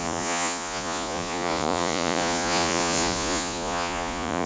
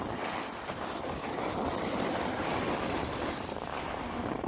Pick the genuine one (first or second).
second